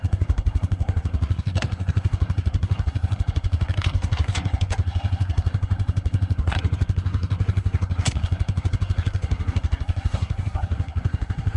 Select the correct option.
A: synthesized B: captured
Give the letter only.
A